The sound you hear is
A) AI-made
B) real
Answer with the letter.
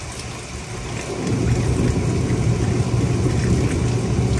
B